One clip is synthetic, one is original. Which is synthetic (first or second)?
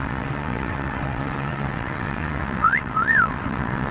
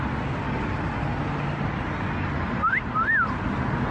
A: first